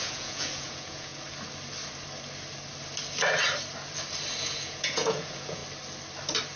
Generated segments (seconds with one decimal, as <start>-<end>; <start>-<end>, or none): 0.0-1.1; 4.4-5.6